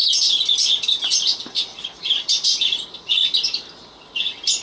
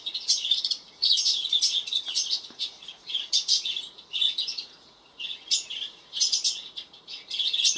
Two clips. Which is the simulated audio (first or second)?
second